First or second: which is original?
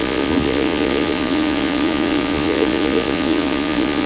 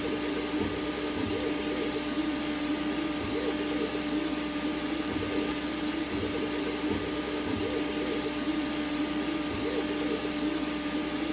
second